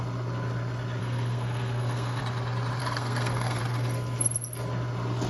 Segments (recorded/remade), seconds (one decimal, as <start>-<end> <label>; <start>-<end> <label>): 0.0-1.0 recorded; 1.0-2.2 remade; 2.2-2.8 recorded; 2.8-3.6 remade; 3.6-5.3 recorded